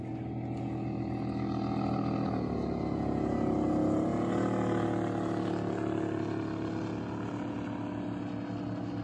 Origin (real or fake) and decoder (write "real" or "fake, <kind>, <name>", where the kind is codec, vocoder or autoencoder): real